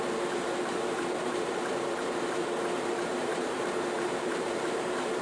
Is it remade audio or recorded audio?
remade